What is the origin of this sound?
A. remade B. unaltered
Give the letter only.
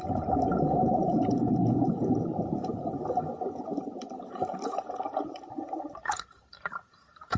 A